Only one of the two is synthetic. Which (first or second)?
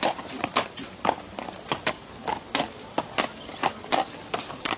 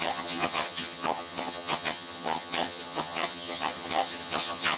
second